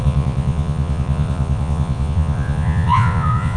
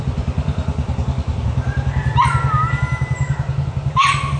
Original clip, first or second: second